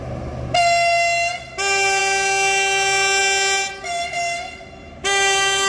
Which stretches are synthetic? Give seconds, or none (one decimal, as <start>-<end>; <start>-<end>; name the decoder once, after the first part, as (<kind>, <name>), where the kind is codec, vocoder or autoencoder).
none